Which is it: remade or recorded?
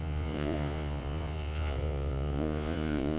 remade